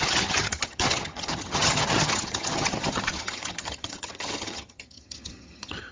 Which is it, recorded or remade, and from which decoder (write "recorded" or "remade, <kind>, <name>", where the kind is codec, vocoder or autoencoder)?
remade, vocoder, HiFi-GAN